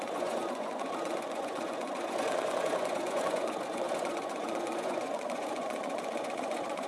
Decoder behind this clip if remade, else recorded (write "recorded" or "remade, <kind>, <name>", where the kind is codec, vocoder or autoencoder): remade, vocoder, Vocos